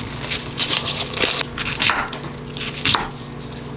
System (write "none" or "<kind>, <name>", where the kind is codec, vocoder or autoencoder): none